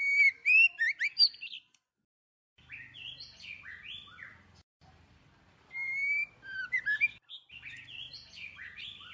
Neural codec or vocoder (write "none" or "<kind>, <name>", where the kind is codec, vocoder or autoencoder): vocoder, BigVGAN v2